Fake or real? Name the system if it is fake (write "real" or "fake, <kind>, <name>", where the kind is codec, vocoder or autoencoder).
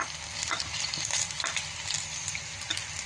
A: real